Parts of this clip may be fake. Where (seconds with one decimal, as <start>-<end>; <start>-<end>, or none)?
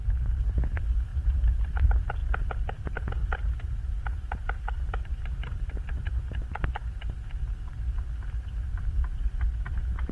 1.1-1.7; 3.2-7.4